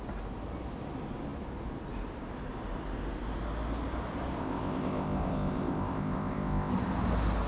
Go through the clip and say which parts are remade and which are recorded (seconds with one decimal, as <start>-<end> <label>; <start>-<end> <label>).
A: 0.0-4.4 recorded; 4.4-6.7 remade; 6.7-7.5 recorded